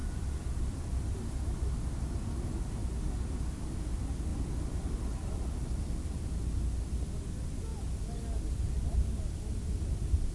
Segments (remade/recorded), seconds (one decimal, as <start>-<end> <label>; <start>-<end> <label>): 0.0-1.3 remade; 1.3-2.8 recorded; 2.8-3.6 remade; 3.6-4.3 recorded; 4.3-6.2 remade; 6.2-10.3 recorded